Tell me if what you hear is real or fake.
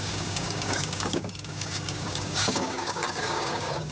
fake